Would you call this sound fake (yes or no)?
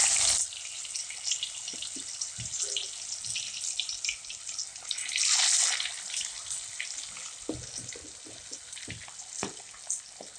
no